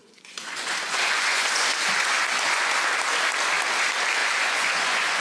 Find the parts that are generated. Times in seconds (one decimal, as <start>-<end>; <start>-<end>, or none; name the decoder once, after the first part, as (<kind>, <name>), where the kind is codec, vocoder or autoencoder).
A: 0.0-2.8 (vocoder, Vocos); 4.2-5.2